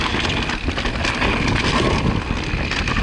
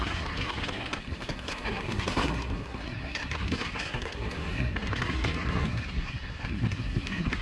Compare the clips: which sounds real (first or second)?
first